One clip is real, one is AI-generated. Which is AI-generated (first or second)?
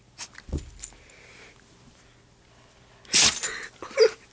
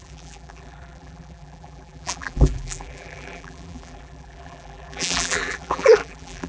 second